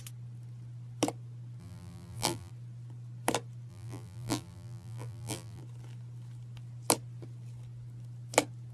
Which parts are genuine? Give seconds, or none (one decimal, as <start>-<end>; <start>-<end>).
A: 0.0-1.6; 2.5-3.7; 5.6-8.7